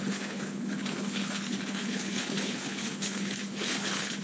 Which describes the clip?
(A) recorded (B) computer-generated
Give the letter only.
B